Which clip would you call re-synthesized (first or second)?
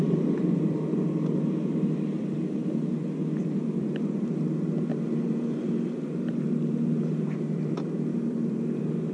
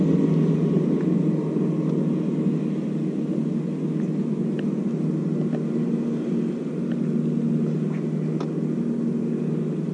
first